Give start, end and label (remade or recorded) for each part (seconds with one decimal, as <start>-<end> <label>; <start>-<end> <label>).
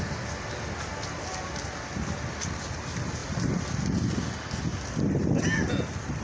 0.0-6.2 recorded